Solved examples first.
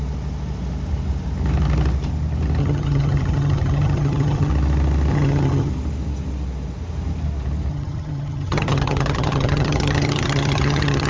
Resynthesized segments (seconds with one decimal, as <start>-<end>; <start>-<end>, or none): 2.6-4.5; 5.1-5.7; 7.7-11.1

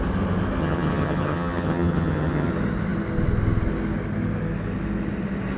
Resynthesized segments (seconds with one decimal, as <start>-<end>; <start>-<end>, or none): 0.6-2.5

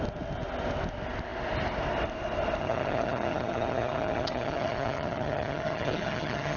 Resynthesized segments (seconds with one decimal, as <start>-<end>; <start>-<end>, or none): 2.6-6.6